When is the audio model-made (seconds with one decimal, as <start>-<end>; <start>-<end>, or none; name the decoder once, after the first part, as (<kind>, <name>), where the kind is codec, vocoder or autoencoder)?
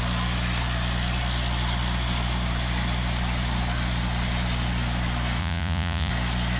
5.4-6.1 (vocoder, Vocos)